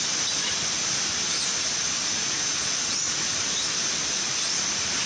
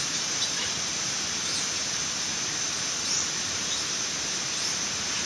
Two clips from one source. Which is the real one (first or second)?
first